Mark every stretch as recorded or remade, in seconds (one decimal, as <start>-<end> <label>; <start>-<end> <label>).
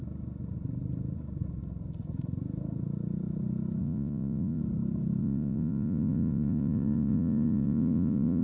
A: 0.0-3.8 recorded; 3.8-4.6 remade; 4.6-5.2 recorded; 5.2-8.4 remade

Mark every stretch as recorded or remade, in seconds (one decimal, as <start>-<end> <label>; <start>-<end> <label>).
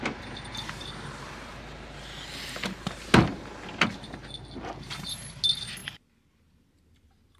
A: 0.0-0.8 recorded; 0.8-1.5 remade; 1.5-7.4 recorded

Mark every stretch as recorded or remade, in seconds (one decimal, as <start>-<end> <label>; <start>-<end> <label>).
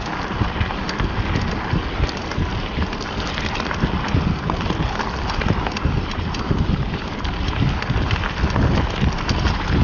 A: 0.0-9.8 recorded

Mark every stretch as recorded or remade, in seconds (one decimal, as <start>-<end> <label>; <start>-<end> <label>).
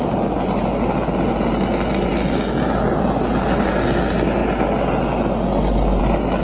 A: 0.0-6.4 recorded